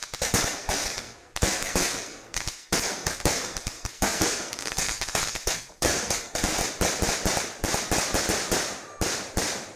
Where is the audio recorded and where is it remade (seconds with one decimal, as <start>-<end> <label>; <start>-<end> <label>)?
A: 0.0-6.6 remade; 6.6-9.8 recorded